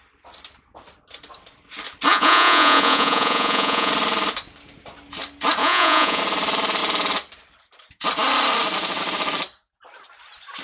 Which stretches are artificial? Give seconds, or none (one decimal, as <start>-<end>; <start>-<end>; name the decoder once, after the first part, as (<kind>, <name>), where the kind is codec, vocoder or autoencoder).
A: 2.1-3.9 (vocoder, Vocos); 5.6-6.2